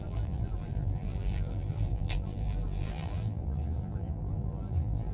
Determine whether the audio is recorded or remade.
remade